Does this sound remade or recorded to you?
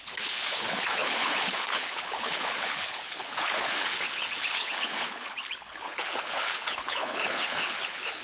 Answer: remade